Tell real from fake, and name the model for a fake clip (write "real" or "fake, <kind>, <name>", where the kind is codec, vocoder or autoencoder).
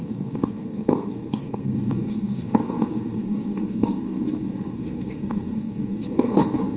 fake, codec, SNAC